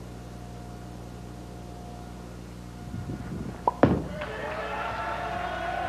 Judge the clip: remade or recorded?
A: recorded